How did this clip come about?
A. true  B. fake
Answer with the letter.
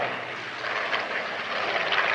A